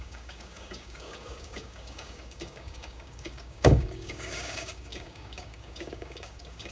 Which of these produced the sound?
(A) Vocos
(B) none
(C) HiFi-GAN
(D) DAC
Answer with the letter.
D